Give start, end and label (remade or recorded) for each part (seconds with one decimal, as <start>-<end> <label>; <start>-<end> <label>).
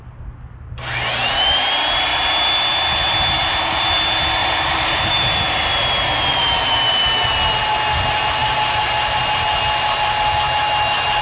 0.0-4.4 recorded; 4.4-5.1 remade; 5.1-6.3 recorded; 6.3-7.0 remade; 7.0-8.4 recorded; 8.4-9.2 remade; 9.2-11.2 recorded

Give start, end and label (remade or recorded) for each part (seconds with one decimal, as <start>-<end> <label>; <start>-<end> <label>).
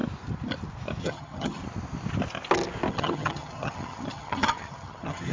0.0-1.0 recorded; 1.0-1.6 remade; 1.6-2.9 recorded; 2.9-5.3 remade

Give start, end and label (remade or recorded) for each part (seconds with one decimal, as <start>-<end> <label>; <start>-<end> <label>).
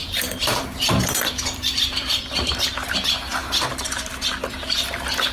0.0-2.2 remade; 2.2-5.3 recorded